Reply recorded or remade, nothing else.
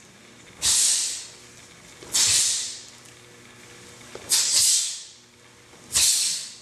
recorded